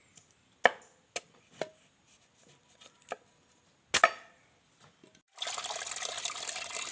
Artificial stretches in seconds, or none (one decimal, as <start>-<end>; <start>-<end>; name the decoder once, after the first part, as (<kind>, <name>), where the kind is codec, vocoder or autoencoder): none

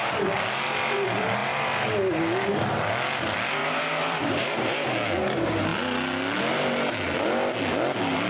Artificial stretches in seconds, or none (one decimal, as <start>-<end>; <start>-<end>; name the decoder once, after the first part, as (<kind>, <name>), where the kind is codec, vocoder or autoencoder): 3.6-4.9 (vocoder, BigVGAN v2)